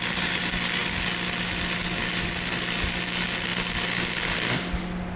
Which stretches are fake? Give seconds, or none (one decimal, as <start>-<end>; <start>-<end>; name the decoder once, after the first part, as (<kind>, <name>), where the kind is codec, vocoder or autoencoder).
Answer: none